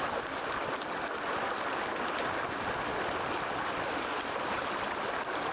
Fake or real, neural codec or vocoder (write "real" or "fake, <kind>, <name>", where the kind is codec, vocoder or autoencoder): real